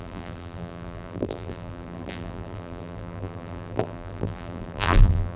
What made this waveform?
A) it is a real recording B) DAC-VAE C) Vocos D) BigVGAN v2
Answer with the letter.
D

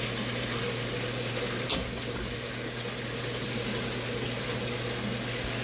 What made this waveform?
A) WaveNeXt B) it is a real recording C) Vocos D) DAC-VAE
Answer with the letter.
B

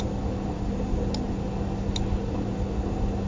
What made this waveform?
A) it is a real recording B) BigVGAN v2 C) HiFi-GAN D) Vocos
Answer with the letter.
A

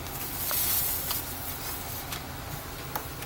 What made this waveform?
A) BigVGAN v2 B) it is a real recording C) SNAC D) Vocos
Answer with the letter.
A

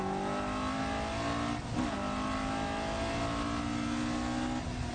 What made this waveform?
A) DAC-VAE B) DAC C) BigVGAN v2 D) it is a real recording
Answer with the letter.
D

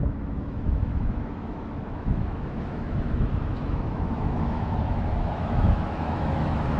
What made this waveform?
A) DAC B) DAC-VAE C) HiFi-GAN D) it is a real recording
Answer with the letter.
B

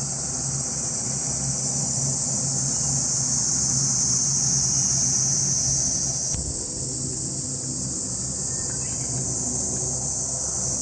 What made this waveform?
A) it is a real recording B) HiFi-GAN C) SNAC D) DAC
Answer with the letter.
A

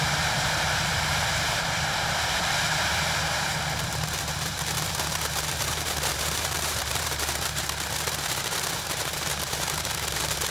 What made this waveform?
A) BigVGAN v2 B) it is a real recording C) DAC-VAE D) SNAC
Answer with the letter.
A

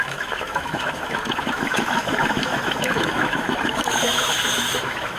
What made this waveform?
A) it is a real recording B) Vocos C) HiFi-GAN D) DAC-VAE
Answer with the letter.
D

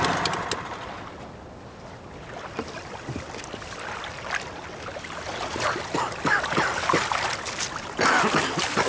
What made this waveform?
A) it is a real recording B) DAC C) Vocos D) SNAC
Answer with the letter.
A